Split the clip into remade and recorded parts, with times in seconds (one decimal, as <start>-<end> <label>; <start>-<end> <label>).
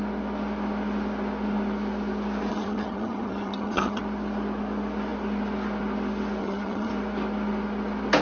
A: 0.0-2.5 recorded; 2.5-4.0 remade; 4.0-6.4 recorded; 6.4-6.9 remade; 6.9-8.2 recorded